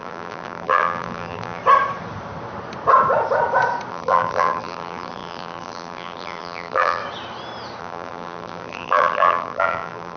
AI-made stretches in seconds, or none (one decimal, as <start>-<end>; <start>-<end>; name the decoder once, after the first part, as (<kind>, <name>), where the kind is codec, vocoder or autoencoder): 0.0-1.6 (vocoder, BigVGAN v2); 3.9-7.0; 7.8-10.2

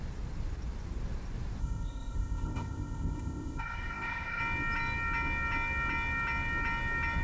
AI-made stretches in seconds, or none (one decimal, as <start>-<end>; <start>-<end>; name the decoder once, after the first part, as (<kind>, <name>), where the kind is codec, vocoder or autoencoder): 1.6-4.4 (codec, ZipCodec)

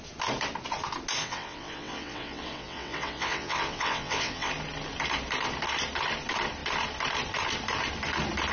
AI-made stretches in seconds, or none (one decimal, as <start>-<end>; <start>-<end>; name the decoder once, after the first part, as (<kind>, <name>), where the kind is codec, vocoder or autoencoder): 1.2-4.5 (vocoder, WaveNeXt)

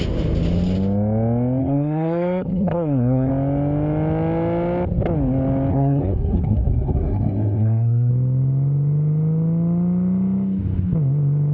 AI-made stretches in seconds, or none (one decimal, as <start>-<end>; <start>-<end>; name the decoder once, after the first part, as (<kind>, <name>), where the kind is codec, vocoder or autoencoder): 1.6-3.3 (codec, SNAC); 5.7-8.1

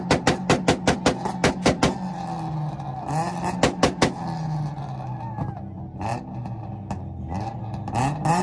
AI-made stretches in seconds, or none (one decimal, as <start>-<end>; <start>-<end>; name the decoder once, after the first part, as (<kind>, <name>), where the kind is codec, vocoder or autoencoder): none